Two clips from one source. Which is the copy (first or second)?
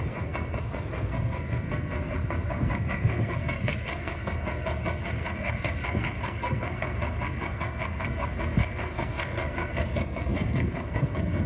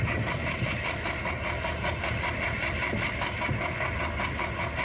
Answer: first